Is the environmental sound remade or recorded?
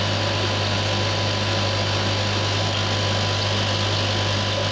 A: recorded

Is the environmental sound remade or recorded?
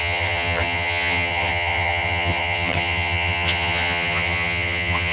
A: remade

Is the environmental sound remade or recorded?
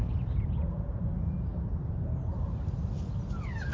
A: recorded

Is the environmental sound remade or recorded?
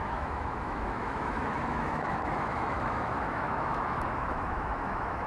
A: remade